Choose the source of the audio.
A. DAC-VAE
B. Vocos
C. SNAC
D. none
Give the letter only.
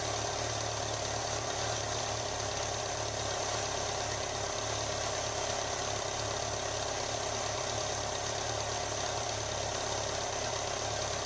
D